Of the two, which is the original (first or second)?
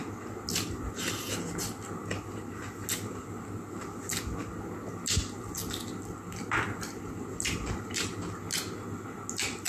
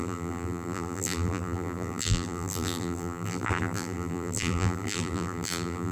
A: first